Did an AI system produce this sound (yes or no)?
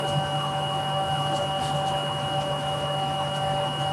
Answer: yes